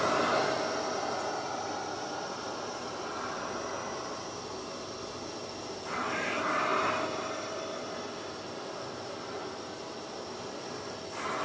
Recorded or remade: recorded